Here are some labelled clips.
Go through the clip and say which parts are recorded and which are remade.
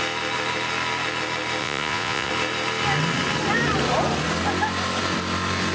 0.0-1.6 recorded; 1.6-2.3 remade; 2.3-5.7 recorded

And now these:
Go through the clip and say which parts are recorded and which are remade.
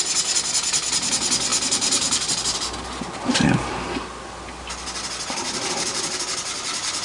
0.0-7.0 recorded